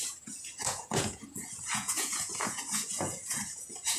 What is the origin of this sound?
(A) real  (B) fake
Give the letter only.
B